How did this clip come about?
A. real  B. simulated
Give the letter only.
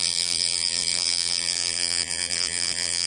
B